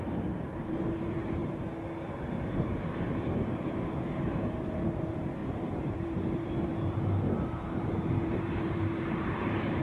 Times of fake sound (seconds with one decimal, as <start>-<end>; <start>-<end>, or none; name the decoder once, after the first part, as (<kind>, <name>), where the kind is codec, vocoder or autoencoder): 0.0-1.4 (vocoder, BigVGAN v2); 3.7-6.7; 8.1-9.8